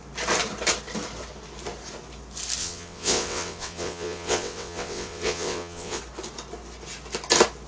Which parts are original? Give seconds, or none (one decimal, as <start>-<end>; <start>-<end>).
0.0-2.6; 6.0-7.7

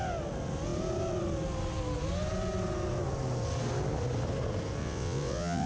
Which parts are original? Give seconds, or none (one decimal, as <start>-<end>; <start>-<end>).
0.0-4.8

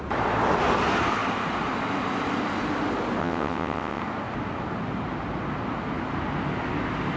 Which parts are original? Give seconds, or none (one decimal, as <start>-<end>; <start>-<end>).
0.0-3.2; 4.0-7.2

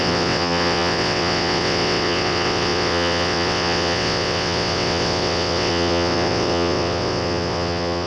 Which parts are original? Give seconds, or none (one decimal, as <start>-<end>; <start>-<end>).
none

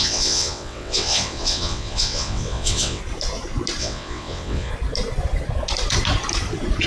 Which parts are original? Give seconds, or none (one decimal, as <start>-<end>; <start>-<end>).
3.0-3.8; 4.7-6.9